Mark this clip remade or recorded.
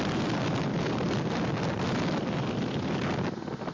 recorded